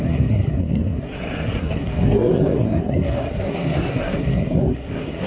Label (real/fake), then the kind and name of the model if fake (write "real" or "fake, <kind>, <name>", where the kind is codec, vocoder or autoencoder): fake, codec, SNAC